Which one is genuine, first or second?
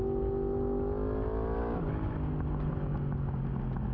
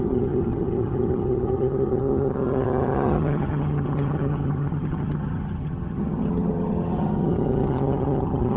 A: first